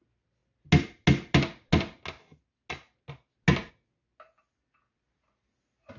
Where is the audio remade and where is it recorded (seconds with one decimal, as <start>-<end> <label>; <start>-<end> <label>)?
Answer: 0.0-6.0 recorded